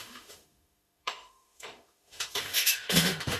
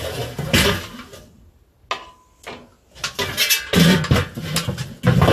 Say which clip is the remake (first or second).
first